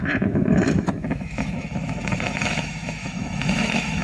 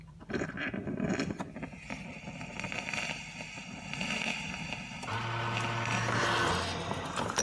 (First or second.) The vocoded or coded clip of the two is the first